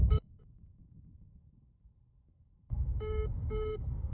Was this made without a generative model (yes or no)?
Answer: no